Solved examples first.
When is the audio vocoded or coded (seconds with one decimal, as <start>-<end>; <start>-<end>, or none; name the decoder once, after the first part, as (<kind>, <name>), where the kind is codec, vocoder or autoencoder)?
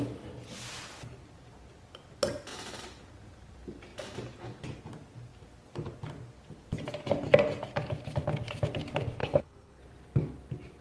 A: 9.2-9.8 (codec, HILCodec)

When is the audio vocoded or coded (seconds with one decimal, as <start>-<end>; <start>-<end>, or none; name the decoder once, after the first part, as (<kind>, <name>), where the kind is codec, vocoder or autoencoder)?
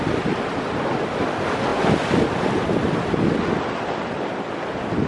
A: none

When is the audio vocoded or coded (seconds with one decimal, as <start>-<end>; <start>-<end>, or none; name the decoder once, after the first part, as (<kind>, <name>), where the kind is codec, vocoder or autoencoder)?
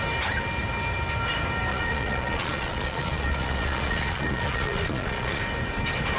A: 1.7-5.4 (vocoder, Vocos)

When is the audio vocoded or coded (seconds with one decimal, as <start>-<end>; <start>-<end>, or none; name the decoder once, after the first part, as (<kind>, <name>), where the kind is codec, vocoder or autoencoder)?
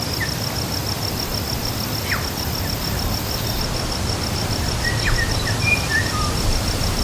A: none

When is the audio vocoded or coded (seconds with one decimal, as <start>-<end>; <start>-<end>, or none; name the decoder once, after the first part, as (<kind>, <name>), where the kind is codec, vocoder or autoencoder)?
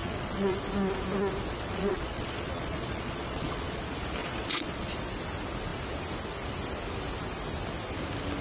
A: 0.0-0.6 (vocoder, Vocos); 1.5-3.8; 4.2-5.0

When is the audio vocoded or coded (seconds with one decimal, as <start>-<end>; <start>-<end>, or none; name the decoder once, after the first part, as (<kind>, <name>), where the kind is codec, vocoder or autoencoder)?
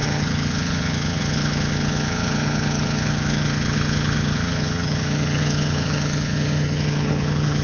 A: 0.0-7.6 (vocoder, HiFi-GAN)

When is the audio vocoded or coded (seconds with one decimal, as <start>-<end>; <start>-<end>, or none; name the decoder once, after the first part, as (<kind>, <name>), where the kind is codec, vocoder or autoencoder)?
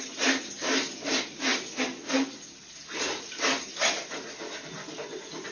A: none